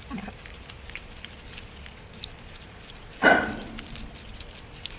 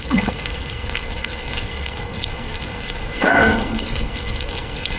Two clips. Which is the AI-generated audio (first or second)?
second